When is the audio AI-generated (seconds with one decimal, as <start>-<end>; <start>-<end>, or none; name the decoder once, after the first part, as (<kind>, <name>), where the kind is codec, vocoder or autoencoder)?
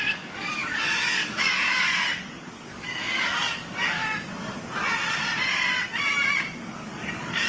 0.0-4.0 (codec, DAC); 6.7-7.5